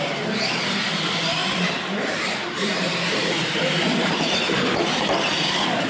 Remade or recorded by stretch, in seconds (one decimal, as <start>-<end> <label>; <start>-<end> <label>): 0.0-1.4 recorded; 1.4-4.9 remade; 4.9-5.9 recorded